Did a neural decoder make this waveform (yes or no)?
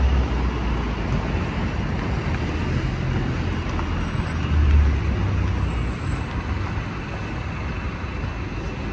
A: no